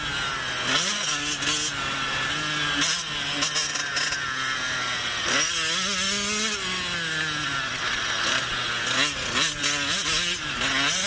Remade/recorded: recorded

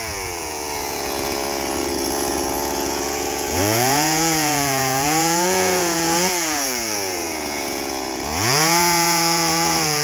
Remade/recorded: remade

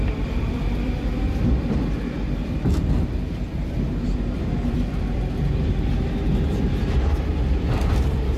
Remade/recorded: remade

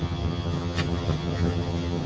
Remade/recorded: remade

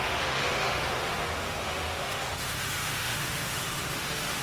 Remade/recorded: remade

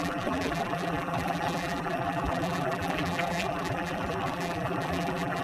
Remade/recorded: remade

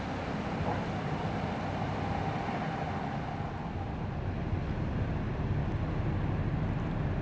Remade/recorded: recorded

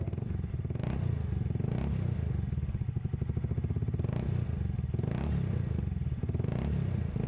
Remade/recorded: recorded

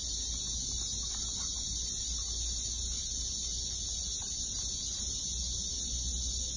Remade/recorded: recorded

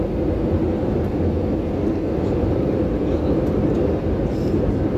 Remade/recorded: remade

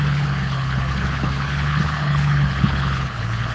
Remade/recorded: remade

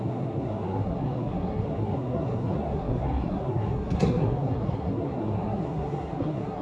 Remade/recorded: remade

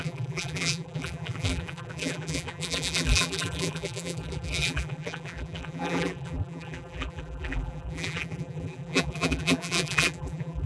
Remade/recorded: remade